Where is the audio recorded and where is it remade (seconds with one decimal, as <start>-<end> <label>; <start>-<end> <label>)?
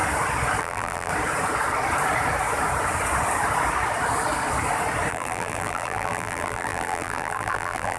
0.0-0.6 recorded; 0.6-1.1 remade; 1.1-5.1 recorded; 5.1-8.0 remade